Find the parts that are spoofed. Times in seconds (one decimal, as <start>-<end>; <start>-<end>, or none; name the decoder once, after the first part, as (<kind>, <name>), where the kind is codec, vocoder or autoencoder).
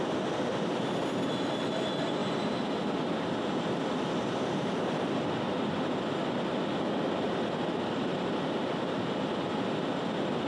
0.0-2.2 (vocoder, BigVGAN v2); 2.9-10.5